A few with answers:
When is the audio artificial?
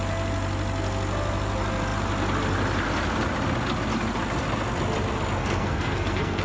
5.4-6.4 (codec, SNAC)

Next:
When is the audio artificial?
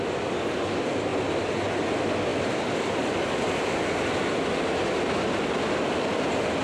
none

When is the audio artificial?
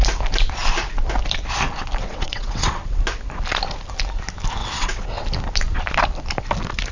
2.0-3.0 (vocoder, WaveNeXt); 4.6-5.2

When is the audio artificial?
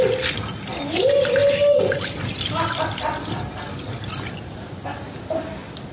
none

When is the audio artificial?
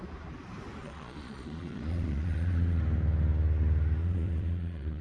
0.8-2.8 (vocoder, Vocos); 4.0-5.0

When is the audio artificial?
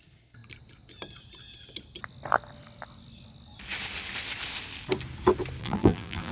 5.6-6.3 (vocoder, BigVGAN v2)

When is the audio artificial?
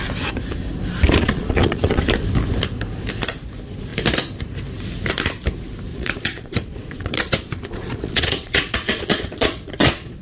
1.2-2.0 (vocoder, Vocos); 5.9-10.2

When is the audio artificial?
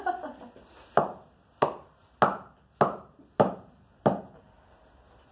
none